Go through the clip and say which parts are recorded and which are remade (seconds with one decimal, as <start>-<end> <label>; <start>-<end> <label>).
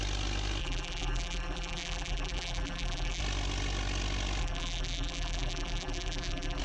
0.0-0.6 recorded; 0.6-3.2 remade; 3.2-4.4 recorded; 4.4-6.6 remade